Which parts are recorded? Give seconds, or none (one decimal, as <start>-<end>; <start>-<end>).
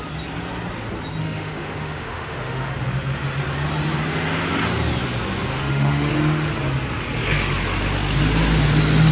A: 0.0-1.2; 2.7-5.5; 6.1-9.1